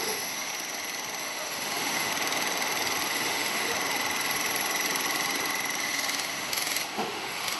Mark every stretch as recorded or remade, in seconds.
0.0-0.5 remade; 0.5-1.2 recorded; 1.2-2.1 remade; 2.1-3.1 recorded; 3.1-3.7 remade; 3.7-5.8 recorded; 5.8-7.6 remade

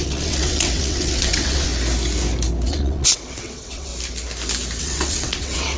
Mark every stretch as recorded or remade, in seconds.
0.0-1.7 remade; 1.7-2.7 recorded; 2.7-3.9 remade; 3.9-4.8 recorded; 4.8-5.8 remade

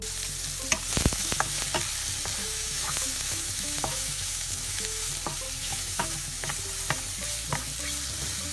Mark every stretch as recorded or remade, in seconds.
0.0-1.1 recorded; 1.1-1.6 remade; 1.6-2.4 recorded; 2.4-5.1 remade; 5.1-5.6 recorded; 5.6-6.5 remade; 6.5-8.5 recorded

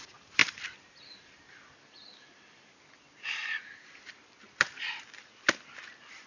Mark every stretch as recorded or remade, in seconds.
0.0-0.4 recorded; 0.4-2.7 remade; 2.7-3.4 recorded; 3.4-4.3 remade; 4.3-6.3 recorded

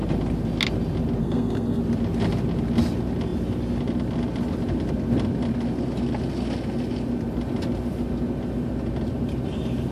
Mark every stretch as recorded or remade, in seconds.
0.0-1.2 recorded; 1.2-1.8 remade; 1.8-9.9 recorded

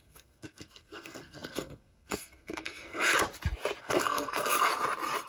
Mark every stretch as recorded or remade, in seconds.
0.0-3.1 remade; 3.1-3.8 recorded; 3.8-4.7 remade; 4.7-5.3 recorded

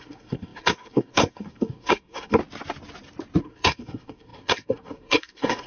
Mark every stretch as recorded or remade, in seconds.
0.0-2.4 remade; 2.4-3.4 recorded; 3.4-5.7 remade